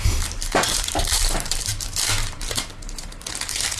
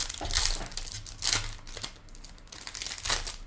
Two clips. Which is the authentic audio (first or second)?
second